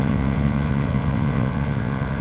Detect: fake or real fake